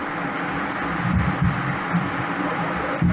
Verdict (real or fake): real